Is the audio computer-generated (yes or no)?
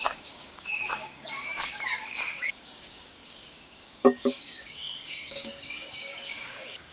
yes